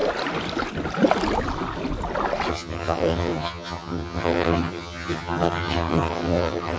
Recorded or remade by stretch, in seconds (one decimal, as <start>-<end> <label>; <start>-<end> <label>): 0.0-2.5 recorded; 2.5-6.8 remade